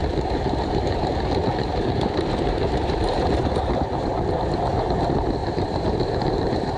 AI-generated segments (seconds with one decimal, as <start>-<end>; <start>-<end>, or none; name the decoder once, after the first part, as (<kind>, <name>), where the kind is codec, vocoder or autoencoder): 0.0-1.1 (vocoder, BigVGAN v2); 1.5-4.2; 5.4-6.8